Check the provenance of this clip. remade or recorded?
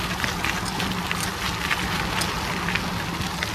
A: recorded